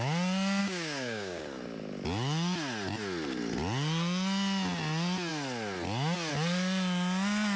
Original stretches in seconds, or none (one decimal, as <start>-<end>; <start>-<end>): 0.0-0.6; 1.4-7.6